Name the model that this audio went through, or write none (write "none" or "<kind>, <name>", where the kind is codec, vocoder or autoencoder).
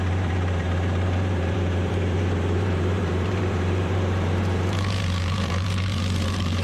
vocoder, BigVGAN v2